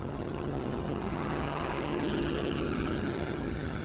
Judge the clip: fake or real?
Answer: fake